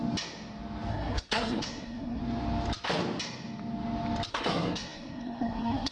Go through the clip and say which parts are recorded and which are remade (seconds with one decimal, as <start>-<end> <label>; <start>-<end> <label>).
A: 0.0-0.9 recorded; 0.9-2.2 remade; 2.2-4.3 recorded; 4.3-5.9 remade